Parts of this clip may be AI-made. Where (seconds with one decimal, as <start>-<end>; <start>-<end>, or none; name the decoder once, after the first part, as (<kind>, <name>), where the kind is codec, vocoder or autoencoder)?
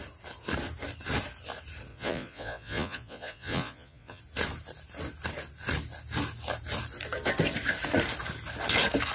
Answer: 1.9-4.2 (vocoder, Vocos)